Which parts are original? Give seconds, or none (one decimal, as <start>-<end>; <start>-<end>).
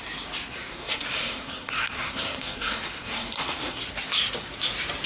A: 0.0-0.7; 3.8-5.1